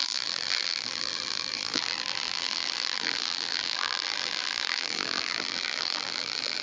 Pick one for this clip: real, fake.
fake